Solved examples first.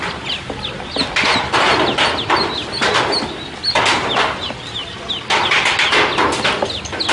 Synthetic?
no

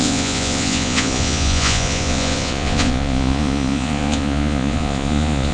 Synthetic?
yes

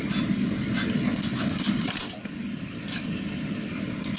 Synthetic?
no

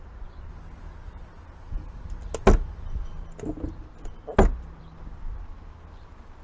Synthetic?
no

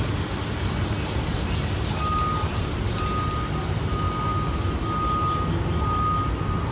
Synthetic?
no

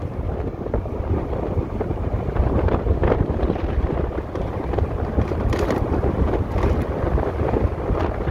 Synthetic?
no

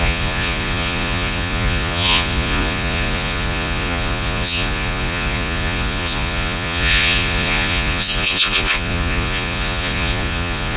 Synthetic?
yes